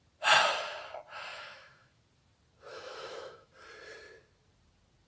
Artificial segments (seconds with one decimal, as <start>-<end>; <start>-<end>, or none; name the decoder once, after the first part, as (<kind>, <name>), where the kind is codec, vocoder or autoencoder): 1.3-2.0 (autoencoder, DAC-VAE); 2.7-3.5